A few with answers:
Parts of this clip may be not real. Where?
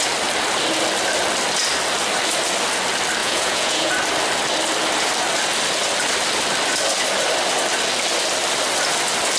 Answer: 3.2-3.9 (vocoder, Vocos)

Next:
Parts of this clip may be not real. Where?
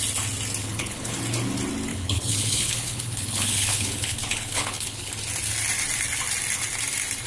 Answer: 0.6-1.2 (codec, HILCodec); 1.9-5.1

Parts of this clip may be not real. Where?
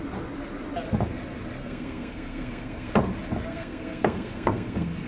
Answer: 1.6-2.9 (codec, SNAC); 3.5-5.1